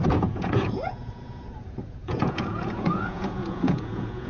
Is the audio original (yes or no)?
no